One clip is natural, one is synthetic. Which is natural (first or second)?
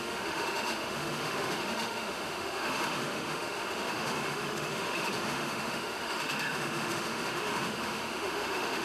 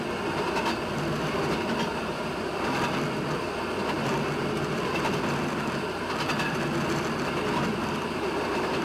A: second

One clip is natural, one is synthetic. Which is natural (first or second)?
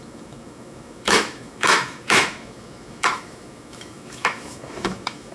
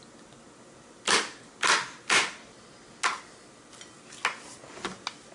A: second